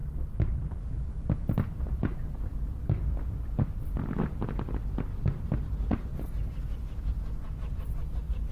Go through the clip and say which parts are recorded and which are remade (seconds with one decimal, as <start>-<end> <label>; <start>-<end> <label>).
0.0-8.5 recorded